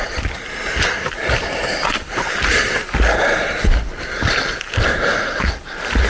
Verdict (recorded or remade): recorded